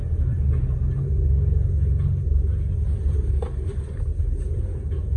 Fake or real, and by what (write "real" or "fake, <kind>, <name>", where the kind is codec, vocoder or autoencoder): real